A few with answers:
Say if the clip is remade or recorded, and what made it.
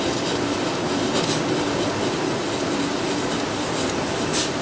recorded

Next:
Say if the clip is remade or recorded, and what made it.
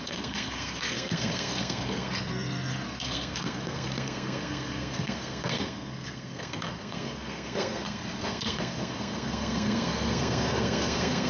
remade, codec, SNAC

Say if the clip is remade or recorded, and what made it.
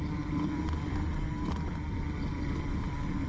recorded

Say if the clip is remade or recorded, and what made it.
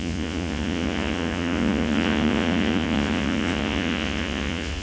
remade, vocoder, Vocos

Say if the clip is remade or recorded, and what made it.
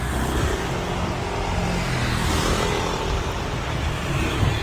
recorded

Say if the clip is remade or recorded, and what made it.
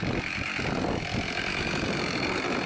recorded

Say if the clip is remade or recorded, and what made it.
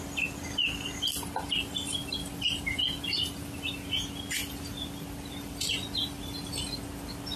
recorded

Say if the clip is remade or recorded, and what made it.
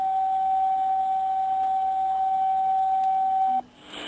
recorded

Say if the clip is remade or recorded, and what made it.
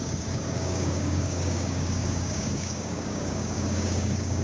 remade, codec, DAC